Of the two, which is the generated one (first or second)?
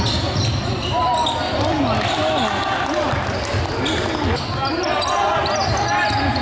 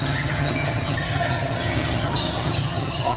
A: second